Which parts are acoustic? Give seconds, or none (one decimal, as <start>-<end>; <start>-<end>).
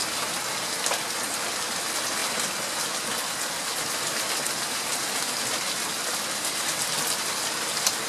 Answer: 0.0-8.1